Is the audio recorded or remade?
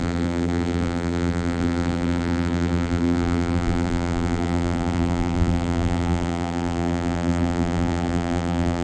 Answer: remade